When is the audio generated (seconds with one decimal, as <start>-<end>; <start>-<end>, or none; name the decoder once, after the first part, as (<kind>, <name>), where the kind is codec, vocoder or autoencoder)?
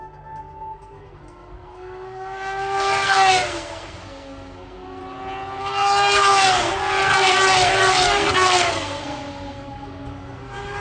0.0-5.0 (codec, SNAC); 5.6-10.8